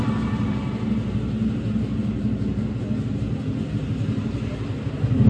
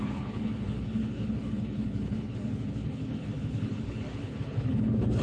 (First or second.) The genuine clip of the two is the first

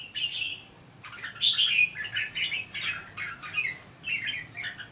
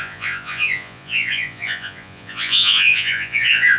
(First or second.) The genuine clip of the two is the first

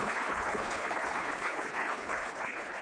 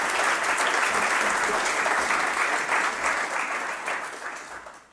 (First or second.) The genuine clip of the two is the second